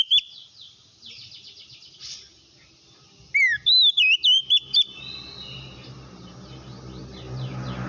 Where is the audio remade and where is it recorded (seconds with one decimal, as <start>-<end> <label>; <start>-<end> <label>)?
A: 0.0-7.9 recorded